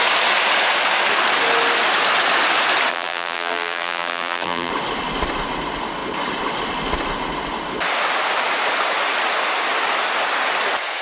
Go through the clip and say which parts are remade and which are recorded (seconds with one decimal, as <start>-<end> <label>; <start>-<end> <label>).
0.0-2.9 recorded; 2.9-4.7 remade; 4.7-11.0 recorded